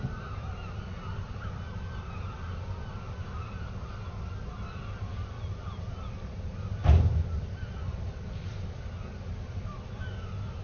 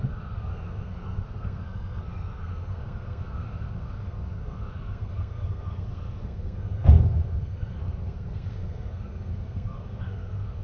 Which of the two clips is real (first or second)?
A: first